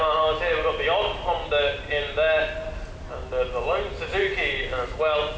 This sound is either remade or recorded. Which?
recorded